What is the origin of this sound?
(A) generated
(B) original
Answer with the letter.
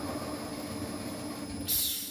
B